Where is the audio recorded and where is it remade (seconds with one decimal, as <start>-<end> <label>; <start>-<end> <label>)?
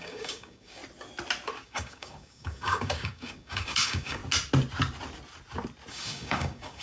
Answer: 0.0-0.8 remade; 0.8-1.5 recorded; 1.5-4.2 remade; 4.2-5.9 recorded; 5.9-6.8 remade